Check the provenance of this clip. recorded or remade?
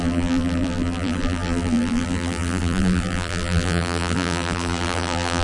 remade